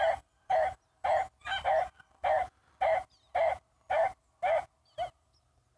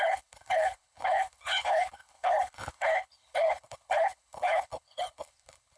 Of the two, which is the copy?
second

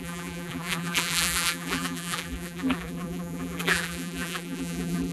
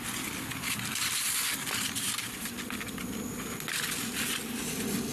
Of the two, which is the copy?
first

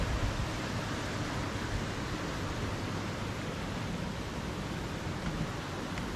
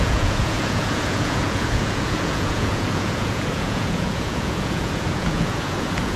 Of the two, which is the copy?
second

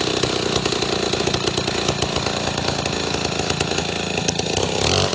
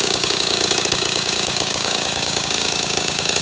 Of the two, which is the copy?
second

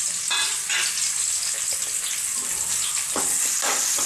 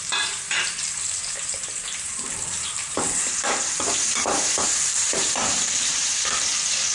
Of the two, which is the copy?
second